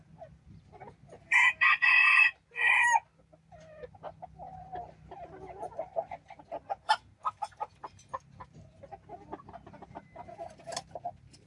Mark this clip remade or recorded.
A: recorded